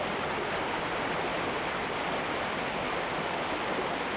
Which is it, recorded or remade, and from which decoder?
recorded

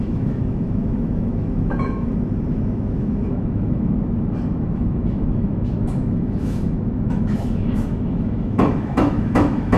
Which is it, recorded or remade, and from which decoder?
remade, autoencoder, DAC-VAE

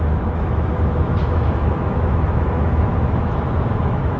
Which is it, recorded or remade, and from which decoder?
remade, autoencoder, DAC-VAE